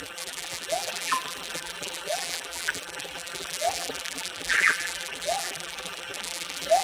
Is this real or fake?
fake